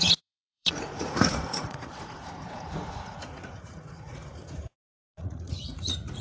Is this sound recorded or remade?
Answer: remade